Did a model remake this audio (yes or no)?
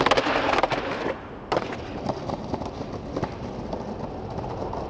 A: no